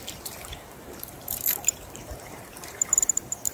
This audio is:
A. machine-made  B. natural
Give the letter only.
A